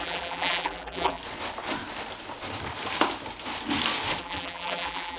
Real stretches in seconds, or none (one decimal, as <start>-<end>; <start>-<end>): 1.2-4.2